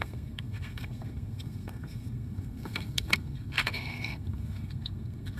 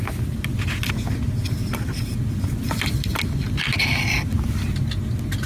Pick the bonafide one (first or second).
second